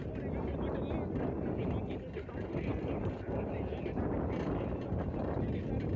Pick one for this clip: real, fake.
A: real